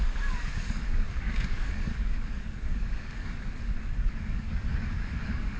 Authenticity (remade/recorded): remade